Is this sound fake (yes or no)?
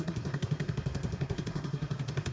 yes